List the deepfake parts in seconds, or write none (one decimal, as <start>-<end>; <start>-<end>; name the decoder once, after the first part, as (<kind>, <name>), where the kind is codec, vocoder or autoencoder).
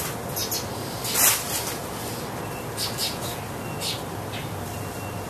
none